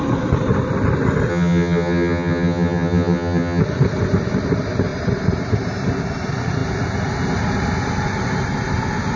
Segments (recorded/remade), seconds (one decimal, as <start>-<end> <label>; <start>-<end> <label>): 0.0-1.3 recorded; 1.3-3.6 remade; 3.6-9.2 recorded